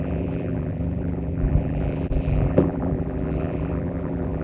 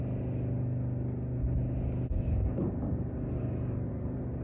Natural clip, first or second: second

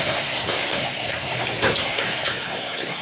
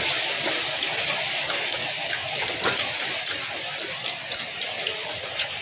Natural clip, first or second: second